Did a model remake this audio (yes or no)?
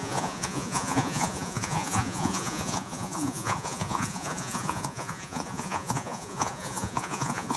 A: yes